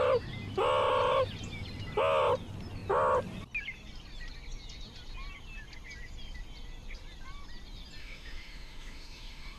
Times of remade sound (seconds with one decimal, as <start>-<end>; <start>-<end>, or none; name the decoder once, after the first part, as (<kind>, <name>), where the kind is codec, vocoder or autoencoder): 8.0-9.6 (autoencoder, DAC-VAE)